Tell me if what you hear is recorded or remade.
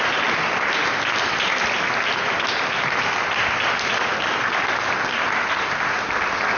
recorded